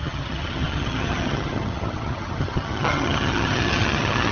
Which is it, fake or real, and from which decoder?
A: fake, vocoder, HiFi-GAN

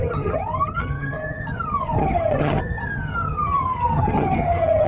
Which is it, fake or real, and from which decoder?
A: fake, vocoder, HiFi-GAN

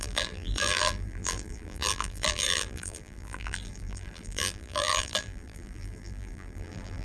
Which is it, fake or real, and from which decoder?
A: fake, vocoder, BigVGAN v2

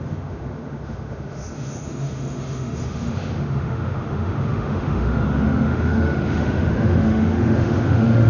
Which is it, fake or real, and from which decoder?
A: fake, autoencoder, DAC-VAE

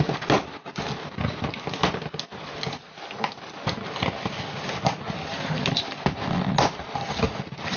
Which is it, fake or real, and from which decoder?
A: real